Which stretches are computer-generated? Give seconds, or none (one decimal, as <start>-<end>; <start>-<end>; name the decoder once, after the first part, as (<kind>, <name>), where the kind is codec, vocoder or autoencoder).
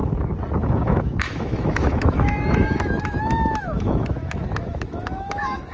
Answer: 0.6-5.7 (autoencoder, DAC-VAE)